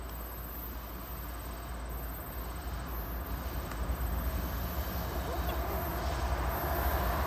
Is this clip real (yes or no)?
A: yes